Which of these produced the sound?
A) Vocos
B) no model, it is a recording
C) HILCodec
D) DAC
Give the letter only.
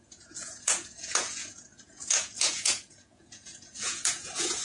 A